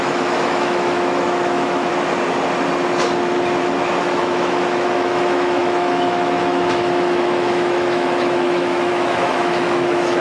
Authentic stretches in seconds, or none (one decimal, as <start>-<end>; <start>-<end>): 1.9-4.0